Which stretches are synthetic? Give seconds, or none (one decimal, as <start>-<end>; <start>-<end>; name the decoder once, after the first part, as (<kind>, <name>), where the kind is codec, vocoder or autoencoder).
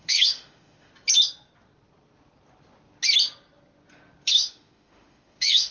0.0-0.9 (autoencoder, DAC-VAE); 4.3-5.7